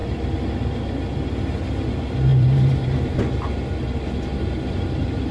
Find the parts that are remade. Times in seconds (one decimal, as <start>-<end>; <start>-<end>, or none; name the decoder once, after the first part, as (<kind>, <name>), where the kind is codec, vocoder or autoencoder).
2.3-3.2 (vocoder, BigVGAN v2)